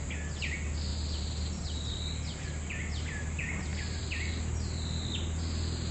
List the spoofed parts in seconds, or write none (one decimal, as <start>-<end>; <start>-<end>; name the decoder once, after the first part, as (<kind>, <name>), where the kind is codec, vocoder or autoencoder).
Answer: 0.9-1.5 (vocoder, BigVGAN v2)